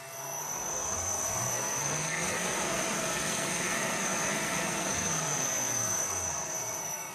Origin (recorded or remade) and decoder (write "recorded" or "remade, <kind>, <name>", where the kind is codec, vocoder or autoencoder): remade, codec, SNAC